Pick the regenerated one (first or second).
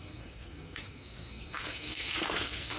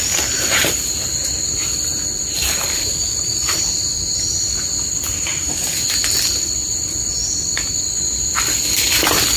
first